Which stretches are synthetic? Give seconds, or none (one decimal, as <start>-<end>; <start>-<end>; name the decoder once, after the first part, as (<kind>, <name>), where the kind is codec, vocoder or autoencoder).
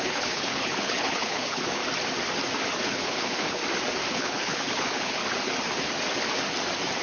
0.0-1.8 (codec, HILCodec); 2.8-3.6; 4.1-5.2